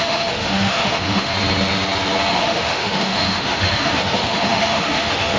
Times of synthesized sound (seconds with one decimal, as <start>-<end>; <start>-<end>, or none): 0.0-1.3; 2.3-5.4